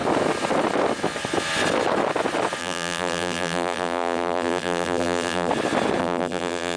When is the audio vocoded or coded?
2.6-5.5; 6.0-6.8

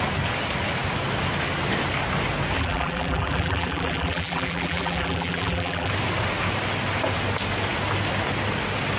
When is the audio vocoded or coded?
2.6-5.9

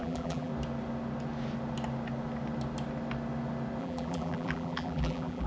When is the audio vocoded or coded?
0.0-0.5; 3.8-5.5

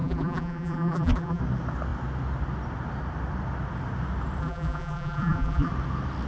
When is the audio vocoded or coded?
0.0-1.4; 4.4-5.7

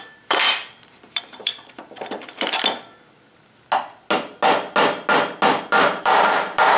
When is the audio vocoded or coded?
0.0-1.5; 5.6-6.8

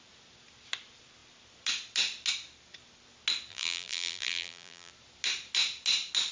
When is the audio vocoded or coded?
3.5-4.9

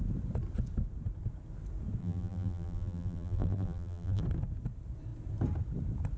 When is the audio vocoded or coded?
2.0-4.2